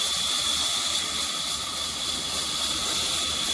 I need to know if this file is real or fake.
real